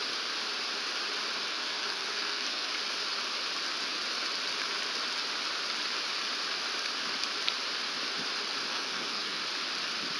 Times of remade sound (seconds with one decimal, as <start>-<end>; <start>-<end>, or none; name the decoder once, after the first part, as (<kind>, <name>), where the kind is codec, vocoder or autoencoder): 1.5-2.7 (codec, SNAC); 8.7-9.4